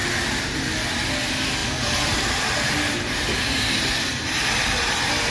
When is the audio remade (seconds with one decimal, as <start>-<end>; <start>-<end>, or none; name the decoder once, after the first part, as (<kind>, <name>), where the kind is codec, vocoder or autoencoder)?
0.0-0.5 (vocoder, BigVGAN v2); 1.6-4.8